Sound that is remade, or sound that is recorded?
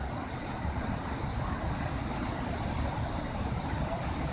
recorded